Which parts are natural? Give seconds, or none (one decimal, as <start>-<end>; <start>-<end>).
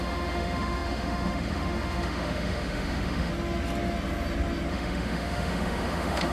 3.3-4.7